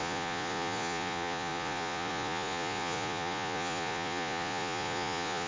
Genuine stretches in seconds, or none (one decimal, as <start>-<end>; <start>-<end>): none